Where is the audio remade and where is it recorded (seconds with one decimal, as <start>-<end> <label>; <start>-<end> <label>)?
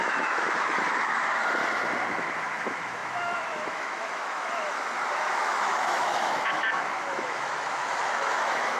0.0-1.6 remade; 1.6-2.1 recorded; 2.1-8.8 remade